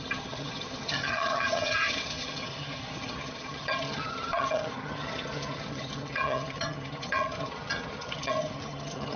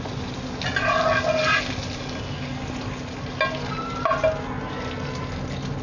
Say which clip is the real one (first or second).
second